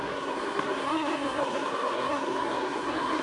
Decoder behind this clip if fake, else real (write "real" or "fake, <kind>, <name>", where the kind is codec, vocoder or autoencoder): fake, codec, SNAC